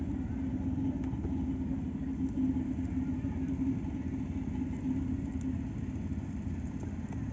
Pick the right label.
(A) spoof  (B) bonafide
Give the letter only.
B